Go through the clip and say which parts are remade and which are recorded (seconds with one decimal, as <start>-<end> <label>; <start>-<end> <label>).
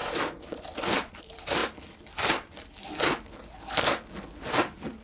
0.0-1.6 remade; 1.6-4.4 recorded; 4.4-5.0 remade